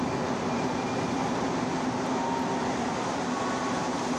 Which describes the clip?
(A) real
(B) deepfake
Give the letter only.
A